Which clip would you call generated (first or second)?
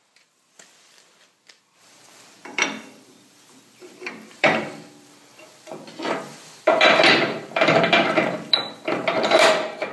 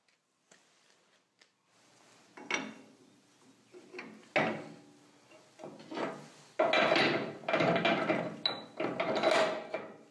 first